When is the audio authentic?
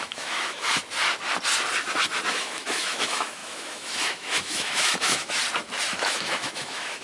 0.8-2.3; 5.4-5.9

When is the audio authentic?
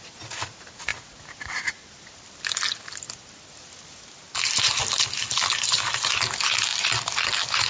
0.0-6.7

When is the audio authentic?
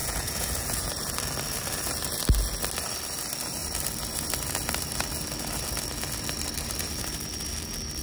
0.9-8.0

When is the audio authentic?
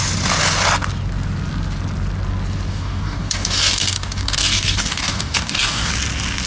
0.0-2.7; 5.9-6.5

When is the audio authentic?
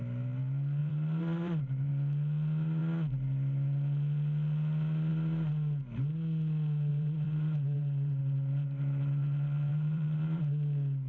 0.0-0.8; 1.9-6.9; 8.2-9.7; 10.4-11.1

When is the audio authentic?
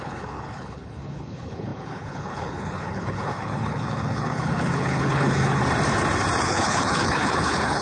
5.6-6.4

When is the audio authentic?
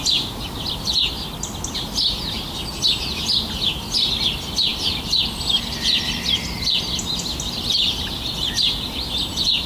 0.0-9.7